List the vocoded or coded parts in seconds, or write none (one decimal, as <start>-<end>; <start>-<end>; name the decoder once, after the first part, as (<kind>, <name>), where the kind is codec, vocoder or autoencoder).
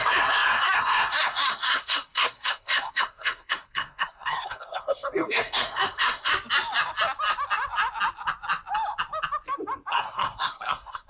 0.0-6.3 (codec, SNAC); 9.9-11.1